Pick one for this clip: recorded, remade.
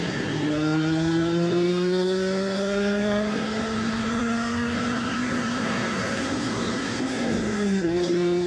remade